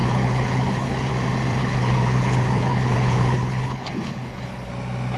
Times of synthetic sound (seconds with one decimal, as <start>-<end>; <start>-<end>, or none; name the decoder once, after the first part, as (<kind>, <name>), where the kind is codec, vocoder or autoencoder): 0.0-1.1 (codec, HILCodec); 1.6-4.7